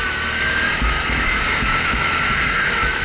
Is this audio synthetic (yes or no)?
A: yes